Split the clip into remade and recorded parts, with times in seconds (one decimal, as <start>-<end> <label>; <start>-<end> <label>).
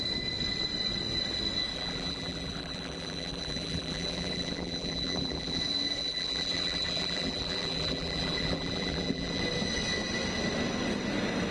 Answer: 0.0-1.7 recorded; 1.7-5.6 remade; 5.6-6.0 recorded; 6.0-9.4 remade; 9.4-11.5 recorded